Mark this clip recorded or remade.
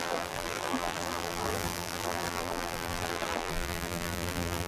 remade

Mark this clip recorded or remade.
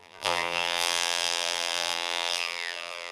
remade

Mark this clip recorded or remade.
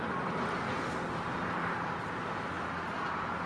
recorded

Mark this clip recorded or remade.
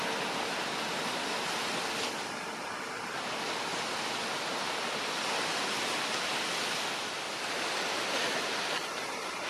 recorded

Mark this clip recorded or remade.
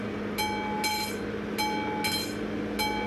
recorded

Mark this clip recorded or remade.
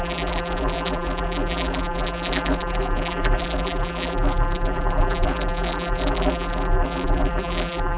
remade